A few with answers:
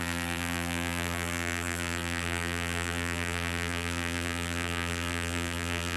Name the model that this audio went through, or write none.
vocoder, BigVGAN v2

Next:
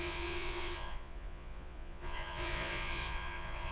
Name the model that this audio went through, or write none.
vocoder, Vocos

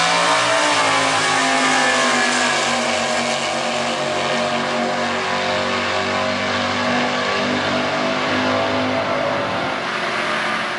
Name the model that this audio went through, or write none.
none